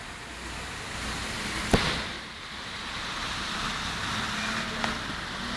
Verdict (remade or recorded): recorded